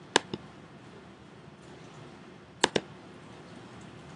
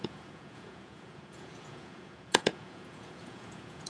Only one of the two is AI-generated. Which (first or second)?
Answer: second